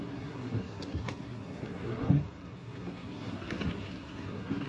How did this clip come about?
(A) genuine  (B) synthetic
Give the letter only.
B